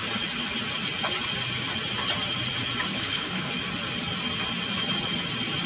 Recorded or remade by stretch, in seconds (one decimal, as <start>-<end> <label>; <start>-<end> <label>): 0.0-2.9 recorded; 2.9-3.5 remade; 3.5-5.7 recorded